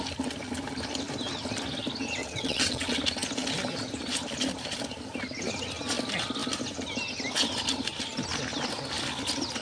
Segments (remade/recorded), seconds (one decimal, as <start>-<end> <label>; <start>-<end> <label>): 0.0-2.2 recorded; 2.2-3.0 remade; 3.0-9.6 recorded